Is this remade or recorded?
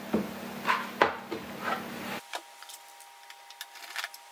recorded